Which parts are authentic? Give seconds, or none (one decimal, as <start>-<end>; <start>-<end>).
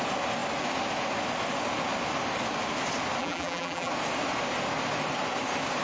0.0-3.2; 3.9-5.8